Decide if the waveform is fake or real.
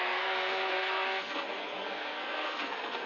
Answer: fake